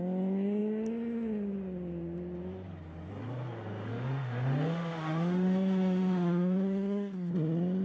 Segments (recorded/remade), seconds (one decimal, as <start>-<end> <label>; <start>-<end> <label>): 0.0-3.9 recorded; 3.9-7.3 remade; 7.3-7.8 recorded